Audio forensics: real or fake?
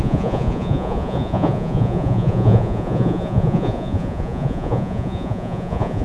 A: fake